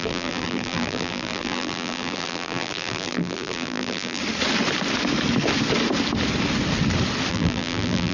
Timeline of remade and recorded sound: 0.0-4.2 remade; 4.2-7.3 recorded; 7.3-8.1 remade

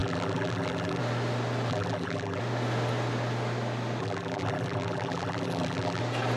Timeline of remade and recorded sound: 0.0-1.0 remade; 1.0-1.7 recorded; 1.7-2.4 remade; 2.4-4.0 recorded; 4.0-6.0 remade; 6.0-6.4 recorded

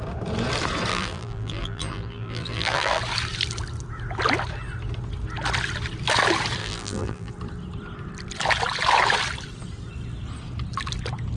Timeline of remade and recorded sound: 0.0-0.9 recorded; 0.9-3.0 remade; 3.0-6.6 recorded; 6.6-7.3 remade; 7.3-11.4 recorded

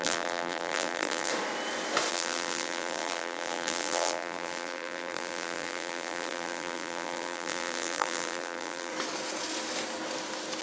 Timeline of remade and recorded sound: 0.0-1.3 remade; 1.3-2.1 recorded; 2.1-8.9 remade; 8.9-10.6 recorded

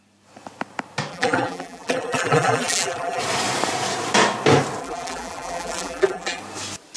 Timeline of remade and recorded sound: 0.0-1.1 recorded; 1.1-3.2 remade; 3.2-4.8 recorded; 4.8-6.4 remade; 6.4-7.0 recorded

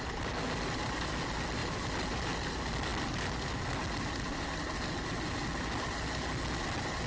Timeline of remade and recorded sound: 0.0-7.1 recorded

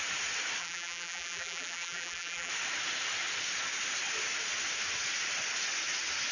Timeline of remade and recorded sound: 0.0-0.6 recorded; 0.6-2.5 remade; 2.5-6.3 recorded